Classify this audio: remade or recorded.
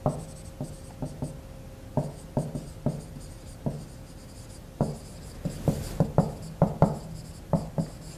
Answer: recorded